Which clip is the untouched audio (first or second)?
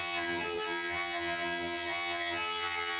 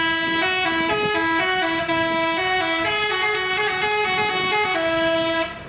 second